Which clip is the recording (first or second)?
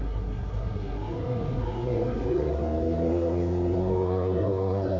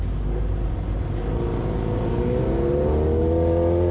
second